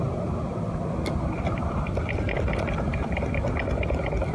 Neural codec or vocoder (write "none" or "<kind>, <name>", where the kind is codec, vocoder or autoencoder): none